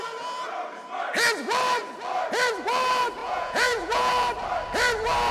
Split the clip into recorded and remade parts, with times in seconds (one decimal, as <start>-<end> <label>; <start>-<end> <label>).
0.0-3.2 recorded; 3.2-4.1 remade; 4.1-5.3 recorded